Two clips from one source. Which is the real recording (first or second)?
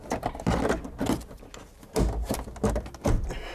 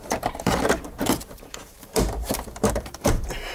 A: first